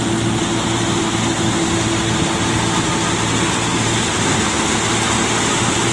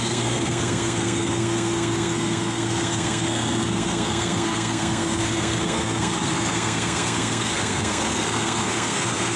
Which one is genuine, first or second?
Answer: first